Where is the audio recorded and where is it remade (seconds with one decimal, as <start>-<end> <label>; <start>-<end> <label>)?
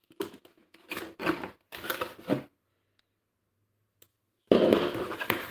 0.0-1.0 remade; 1.0-4.1 recorded; 4.1-5.5 remade